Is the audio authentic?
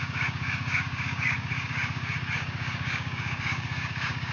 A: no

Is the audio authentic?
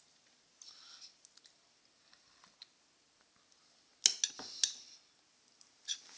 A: yes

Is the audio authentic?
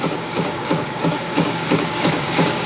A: no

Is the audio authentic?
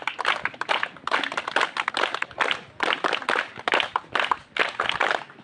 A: yes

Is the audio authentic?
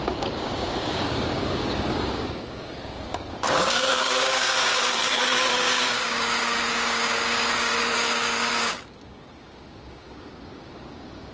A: no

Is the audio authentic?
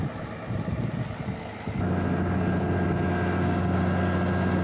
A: yes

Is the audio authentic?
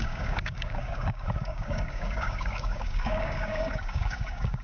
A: no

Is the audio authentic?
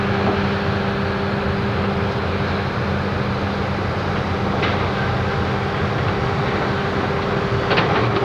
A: yes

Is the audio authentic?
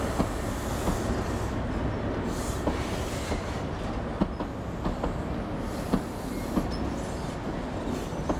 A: yes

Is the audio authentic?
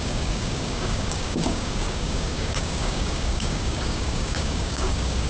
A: no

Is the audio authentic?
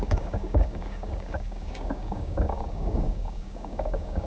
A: no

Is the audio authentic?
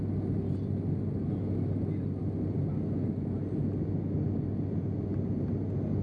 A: yes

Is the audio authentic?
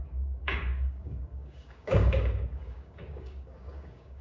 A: no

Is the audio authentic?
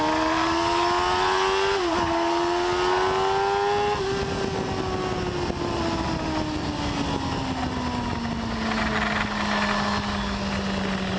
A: yes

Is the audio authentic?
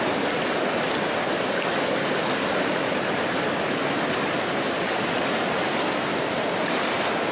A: yes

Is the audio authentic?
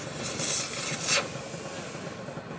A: yes